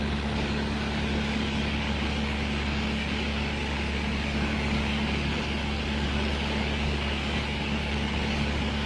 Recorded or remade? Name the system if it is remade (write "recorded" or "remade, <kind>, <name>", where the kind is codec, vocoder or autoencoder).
remade, codec, DAC